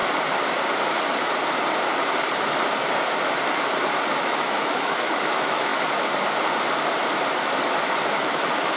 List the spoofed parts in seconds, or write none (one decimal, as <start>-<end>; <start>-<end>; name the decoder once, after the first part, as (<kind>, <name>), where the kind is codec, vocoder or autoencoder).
4.2-5.7 (autoencoder, DAC-VAE); 8.1-8.8